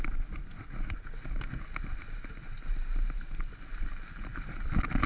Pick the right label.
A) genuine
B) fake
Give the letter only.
A